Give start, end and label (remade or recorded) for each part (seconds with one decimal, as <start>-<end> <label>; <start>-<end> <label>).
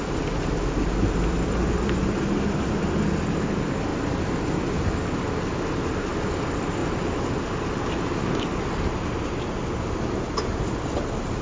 0.0-3.9 remade; 3.9-6.1 recorded; 6.1-6.8 remade; 6.8-10.0 recorded; 10.0-11.4 remade